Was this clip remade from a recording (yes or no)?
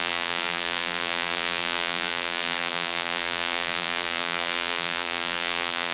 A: yes